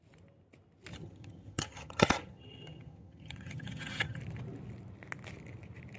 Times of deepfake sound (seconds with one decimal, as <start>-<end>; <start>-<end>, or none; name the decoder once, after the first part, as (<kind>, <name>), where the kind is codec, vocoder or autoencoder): 0.9-4.2 (vocoder, HiFi-GAN)

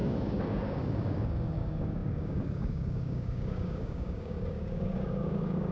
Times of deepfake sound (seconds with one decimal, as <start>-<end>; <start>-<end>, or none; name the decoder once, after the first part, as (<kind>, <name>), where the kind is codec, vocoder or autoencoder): 0.0-5.7 (codec, DAC)

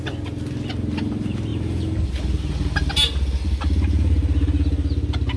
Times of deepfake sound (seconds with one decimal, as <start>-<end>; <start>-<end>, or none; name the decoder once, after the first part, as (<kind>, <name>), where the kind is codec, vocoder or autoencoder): none

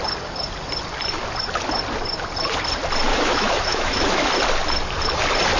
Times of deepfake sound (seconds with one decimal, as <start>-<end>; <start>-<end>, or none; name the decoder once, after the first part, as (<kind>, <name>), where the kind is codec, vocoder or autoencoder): 3.1-4.3 (autoencoder, DAC-VAE)

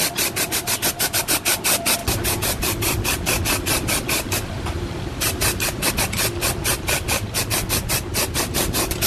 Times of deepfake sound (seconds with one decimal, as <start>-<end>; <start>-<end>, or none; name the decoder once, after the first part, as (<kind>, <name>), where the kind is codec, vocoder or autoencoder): 2.0-5.9 (vocoder, BigVGAN v2)

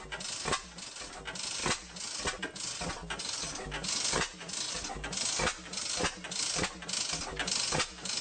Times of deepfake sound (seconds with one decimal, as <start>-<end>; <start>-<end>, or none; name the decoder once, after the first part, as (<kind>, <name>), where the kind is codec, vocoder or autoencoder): none